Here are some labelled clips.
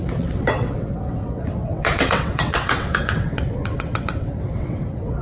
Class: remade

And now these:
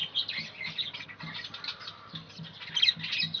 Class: recorded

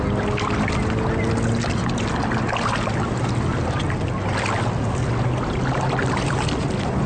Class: recorded